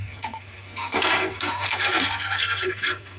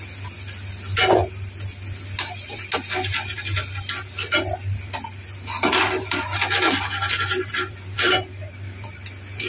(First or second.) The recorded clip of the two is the second